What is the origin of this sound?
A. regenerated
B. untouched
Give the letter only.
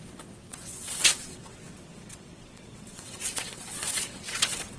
A